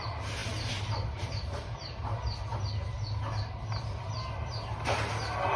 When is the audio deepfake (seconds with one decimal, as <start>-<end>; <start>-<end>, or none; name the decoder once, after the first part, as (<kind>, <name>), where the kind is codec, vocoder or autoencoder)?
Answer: none